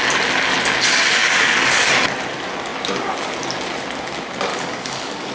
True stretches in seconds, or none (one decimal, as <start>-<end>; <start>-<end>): 0.0-1.2; 1.9-4.5